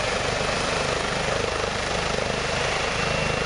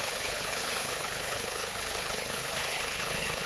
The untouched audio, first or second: first